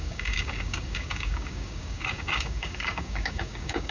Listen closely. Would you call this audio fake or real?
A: fake